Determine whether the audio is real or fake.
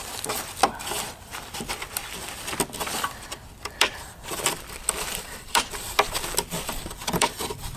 fake